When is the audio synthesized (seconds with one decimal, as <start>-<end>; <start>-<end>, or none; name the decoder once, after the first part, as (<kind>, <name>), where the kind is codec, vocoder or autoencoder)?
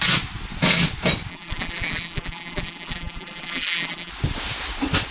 1.3-4.1 (vocoder, BigVGAN v2)